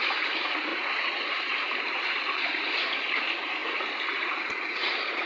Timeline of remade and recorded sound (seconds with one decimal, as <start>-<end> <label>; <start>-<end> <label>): 0.0-5.3 remade